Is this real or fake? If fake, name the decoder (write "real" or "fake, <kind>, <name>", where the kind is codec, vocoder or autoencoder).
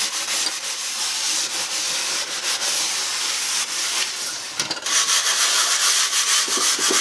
fake, vocoder, BigVGAN v2